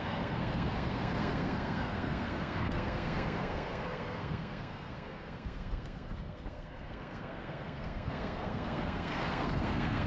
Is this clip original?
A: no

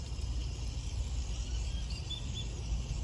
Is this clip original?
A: yes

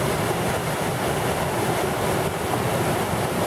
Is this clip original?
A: yes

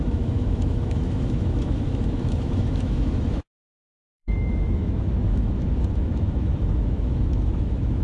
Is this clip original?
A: no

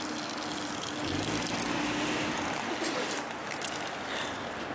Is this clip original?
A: yes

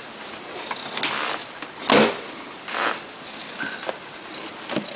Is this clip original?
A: yes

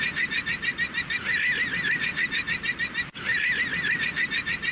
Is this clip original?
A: no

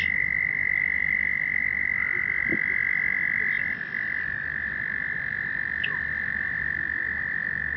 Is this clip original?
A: yes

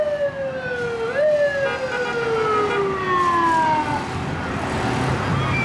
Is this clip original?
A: yes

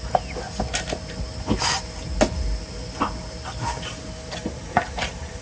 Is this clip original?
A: yes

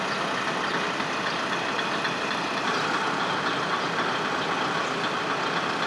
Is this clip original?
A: yes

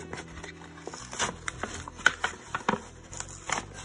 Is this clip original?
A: yes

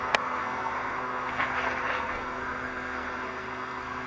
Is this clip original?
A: no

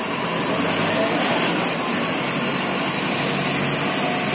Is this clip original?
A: yes